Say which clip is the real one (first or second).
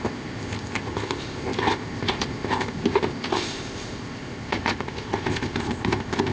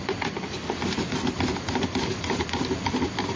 second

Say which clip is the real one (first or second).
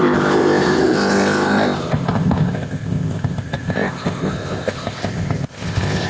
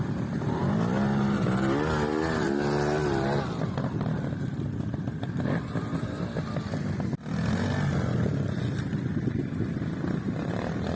second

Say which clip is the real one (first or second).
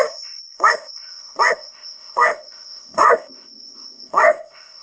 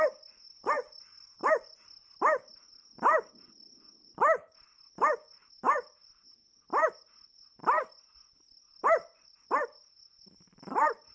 second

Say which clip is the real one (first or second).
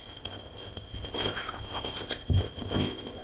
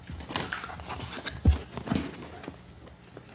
second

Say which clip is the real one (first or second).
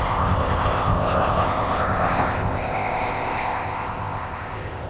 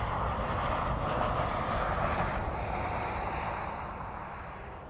second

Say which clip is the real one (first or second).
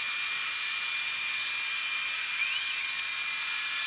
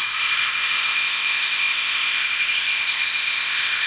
first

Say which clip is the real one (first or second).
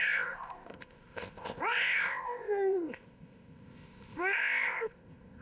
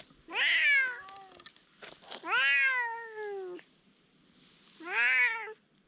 second